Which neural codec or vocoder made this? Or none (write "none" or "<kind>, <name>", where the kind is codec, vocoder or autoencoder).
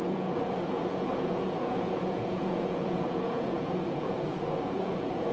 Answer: vocoder, Vocos